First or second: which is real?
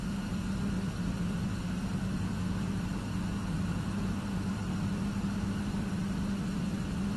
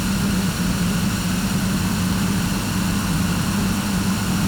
second